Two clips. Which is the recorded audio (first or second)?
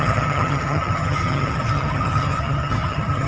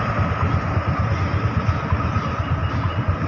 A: second